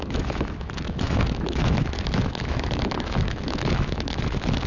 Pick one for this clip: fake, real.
fake